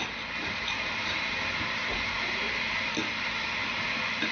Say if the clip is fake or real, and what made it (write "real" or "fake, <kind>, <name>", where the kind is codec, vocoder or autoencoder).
fake, vocoder, BigVGAN v2